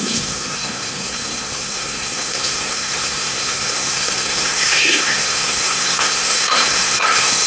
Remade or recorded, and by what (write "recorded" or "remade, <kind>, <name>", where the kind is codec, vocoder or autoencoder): remade, codec, SNAC